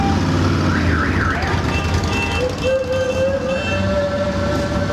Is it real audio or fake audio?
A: real